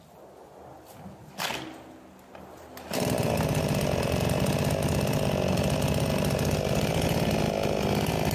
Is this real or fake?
real